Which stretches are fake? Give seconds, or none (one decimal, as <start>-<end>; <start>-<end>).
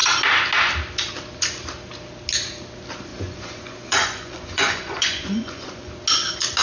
3.1-5.9